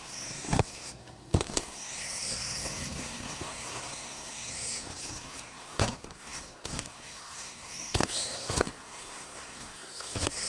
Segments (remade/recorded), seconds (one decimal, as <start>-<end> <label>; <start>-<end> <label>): 0.0-10.5 remade